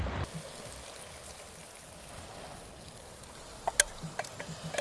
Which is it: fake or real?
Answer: real